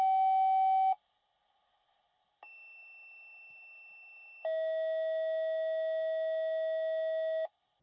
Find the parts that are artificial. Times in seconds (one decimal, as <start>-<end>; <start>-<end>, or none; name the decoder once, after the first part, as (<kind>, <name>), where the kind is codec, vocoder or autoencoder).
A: none